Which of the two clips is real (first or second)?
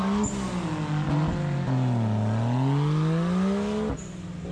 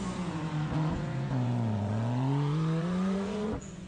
first